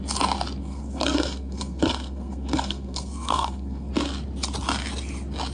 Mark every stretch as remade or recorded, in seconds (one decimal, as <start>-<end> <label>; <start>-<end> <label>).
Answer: 0.0-0.6 recorded; 0.6-3.9 remade; 3.9-5.5 recorded